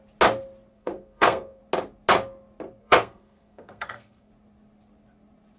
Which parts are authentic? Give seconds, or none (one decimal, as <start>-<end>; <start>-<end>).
0.0-0.7; 1.6-2.8; 4.3-5.6